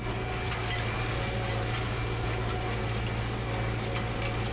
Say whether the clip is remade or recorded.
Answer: recorded